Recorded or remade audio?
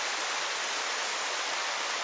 recorded